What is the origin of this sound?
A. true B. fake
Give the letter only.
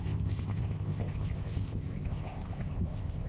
B